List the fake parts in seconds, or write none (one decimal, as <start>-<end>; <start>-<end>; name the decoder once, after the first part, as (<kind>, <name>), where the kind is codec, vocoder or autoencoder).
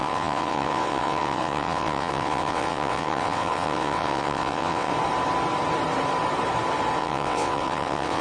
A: 0.0-4.9 (vocoder, WaveNeXt); 7.0-8.2